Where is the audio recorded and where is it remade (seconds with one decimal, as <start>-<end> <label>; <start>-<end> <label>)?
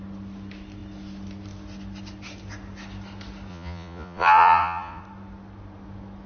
0.0-3.5 recorded; 3.5-5.0 remade; 5.0-6.3 recorded